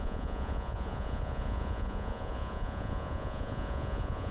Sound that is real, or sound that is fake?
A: fake